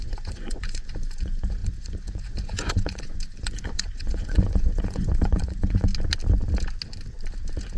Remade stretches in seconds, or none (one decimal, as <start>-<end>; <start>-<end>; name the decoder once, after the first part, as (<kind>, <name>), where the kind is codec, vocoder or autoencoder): 0.0-5.9 (vocoder, Vocos)